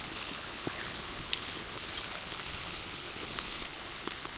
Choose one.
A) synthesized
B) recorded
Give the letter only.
A